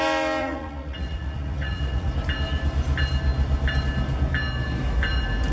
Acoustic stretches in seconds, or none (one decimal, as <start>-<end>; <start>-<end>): 0.0-0.4; 2.1-5.5